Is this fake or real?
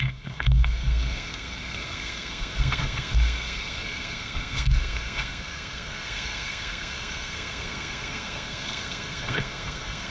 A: fake